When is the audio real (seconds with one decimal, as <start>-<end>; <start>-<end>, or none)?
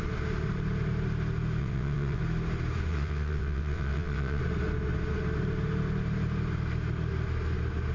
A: 0.0-1.6; 2.2-2.9; 4.4-7.9